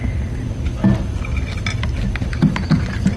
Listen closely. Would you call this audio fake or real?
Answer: real